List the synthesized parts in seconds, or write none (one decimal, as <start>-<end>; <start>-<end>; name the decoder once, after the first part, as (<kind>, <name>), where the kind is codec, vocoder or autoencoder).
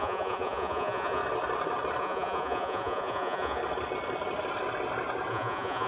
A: 0.0-1.2 (vocoder, Vocos); 2.0-3.6; 5.3-5.9